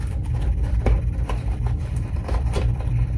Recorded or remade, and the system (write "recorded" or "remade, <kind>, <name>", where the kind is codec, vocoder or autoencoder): remade, vocoder, BigVGAN v2